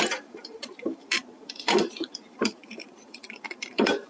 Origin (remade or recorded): remade